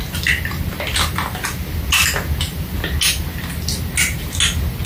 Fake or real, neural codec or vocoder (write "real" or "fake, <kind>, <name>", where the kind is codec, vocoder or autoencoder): real